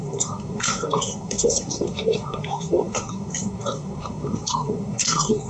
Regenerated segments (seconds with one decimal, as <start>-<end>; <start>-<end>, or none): 0.0-5.5